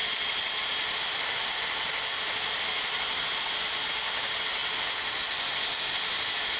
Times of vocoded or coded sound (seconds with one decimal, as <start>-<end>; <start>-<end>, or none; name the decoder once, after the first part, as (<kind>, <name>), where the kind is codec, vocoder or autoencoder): none

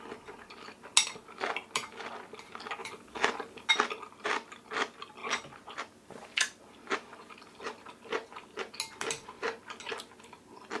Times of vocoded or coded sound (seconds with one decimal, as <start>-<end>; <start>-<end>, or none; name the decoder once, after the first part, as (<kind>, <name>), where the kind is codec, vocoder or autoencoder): 2.8-3.7 (vocoder, BigVGAN v2)

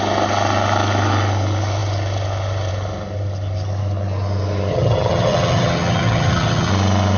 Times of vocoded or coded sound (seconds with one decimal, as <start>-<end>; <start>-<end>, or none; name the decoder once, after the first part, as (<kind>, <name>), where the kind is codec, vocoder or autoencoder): 4.7-6.7 (vocoder, HiFi-GAN)

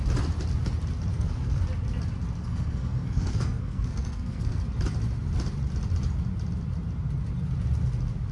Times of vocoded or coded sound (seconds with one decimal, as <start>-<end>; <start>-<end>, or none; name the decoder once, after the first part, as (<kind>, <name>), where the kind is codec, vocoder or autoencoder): 1.1-1.6 (codec, SNAC); 2.4-4.6

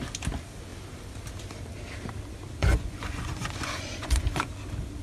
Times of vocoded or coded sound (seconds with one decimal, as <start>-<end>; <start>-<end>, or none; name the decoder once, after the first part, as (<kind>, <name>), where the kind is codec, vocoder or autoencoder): 2.6-4.5 (vocoder, Vocos)

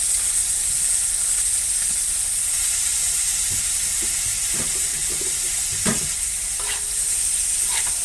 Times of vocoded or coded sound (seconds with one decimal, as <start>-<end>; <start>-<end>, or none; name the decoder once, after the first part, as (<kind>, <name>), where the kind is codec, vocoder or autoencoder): 2.4-4.0 (vocoder, BigVGAN v2); 4.9-5.7